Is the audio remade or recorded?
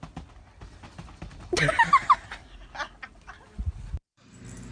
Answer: recorded